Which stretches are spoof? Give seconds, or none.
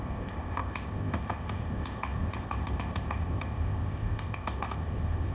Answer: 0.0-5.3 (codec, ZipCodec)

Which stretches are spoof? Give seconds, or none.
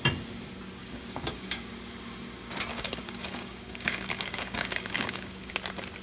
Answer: 0.8-1.7 (codec, DAC); 2.7-5.5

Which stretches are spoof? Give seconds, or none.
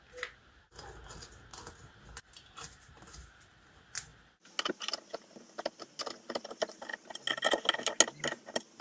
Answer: 1.5-2.3 (vocoder, BigVGAN v2)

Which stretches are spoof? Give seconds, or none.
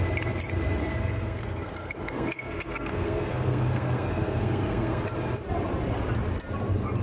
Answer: 0.8-5.0 (codec, SNAC)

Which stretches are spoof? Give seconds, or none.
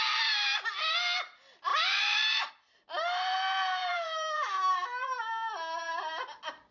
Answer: 1.7-2.5 (vocoder, BigVGAN v2); 3.8-5.2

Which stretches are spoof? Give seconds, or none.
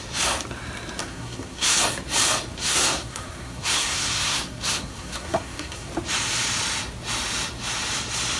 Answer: 1.0-1.8 (codec, SNAC); 2.6-5.9